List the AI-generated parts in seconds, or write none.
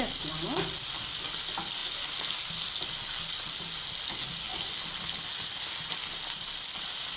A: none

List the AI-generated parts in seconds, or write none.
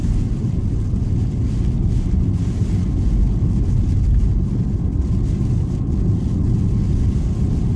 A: none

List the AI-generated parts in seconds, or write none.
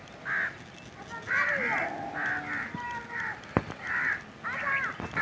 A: none